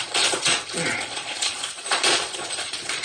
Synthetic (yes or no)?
yes